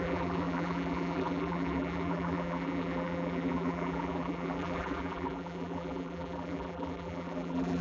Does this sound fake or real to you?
fake